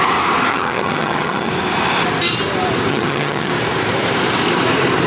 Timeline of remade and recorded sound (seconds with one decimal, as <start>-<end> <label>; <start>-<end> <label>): 0.0-0.5 recorded; 0.5-1.5 remade; 1.5-2.9 recorded; 2.9-3.5 remade; 3.5-5.1 recorded